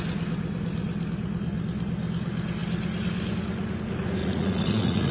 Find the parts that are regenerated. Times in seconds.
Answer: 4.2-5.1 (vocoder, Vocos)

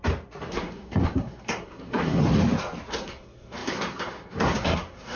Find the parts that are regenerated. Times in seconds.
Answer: 0.5-2.2 (codec, SNAC); 2.9-5.2

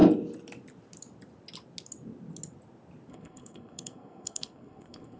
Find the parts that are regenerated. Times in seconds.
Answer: 3.1-5.2 (codec, SNAC)

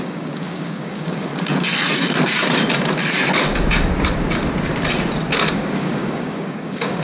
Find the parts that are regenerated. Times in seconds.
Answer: 0.0-1.3 (codec, DAC); 5.5-7.0

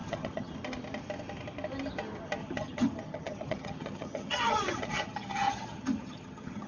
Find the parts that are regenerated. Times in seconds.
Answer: 0.0-0.5 (vocoder, HiFi-GAN); 2.4-6.7

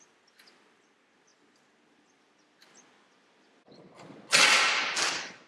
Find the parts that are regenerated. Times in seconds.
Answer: none

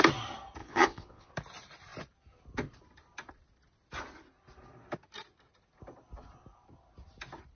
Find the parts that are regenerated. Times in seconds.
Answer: 0.6-1.3 (vocoder, Vocos)

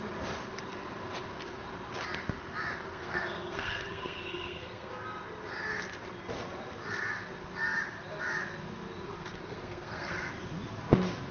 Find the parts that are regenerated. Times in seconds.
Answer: 2.9-4.9 (codec, SNAC); 9.1-10.3